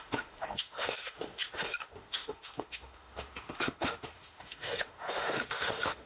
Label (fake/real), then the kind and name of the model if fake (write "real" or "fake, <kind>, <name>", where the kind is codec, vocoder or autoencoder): fake, autoencoder, DAC-VAE